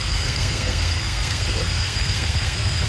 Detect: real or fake fake